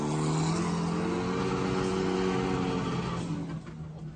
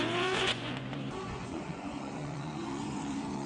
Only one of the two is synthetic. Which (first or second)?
second